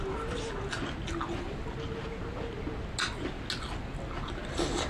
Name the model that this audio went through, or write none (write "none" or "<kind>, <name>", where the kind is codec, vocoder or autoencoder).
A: none